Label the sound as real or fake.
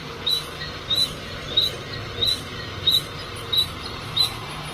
fake